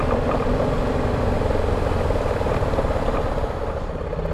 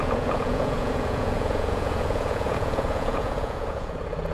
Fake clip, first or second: second